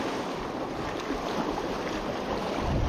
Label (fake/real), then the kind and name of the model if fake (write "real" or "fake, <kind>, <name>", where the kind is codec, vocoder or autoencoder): fake, vocoder, BigVGAN v2